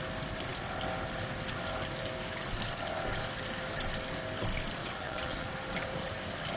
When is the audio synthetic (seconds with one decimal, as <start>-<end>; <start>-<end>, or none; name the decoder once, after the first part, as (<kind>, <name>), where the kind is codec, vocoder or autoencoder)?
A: 4.8-5.5 (vocoder, WaveNeXt)